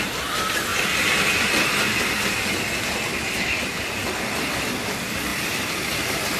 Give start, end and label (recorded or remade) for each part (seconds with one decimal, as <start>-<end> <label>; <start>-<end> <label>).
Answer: 0.0-0.7 recorded; 0.7-2.0 remade; 2.0-3.1 recorded; 3.1-4.1 remade; 4.1-5.3 recorded; 5.3-6.4 remade